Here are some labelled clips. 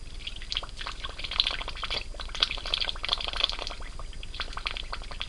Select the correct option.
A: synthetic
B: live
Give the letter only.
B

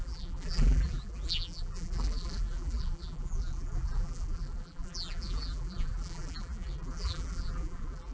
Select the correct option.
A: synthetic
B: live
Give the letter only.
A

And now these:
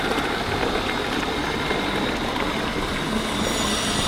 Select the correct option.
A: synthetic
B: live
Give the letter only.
B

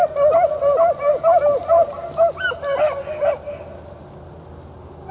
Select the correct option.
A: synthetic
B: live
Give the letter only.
B